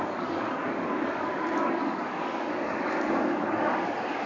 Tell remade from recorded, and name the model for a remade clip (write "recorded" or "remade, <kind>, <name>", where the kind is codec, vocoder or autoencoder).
remade, codec, DAC